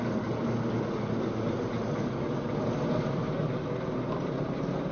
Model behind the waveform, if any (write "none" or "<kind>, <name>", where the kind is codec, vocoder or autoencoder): none